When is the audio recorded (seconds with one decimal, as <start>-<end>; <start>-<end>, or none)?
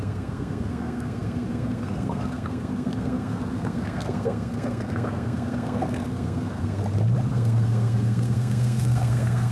6.8-7.3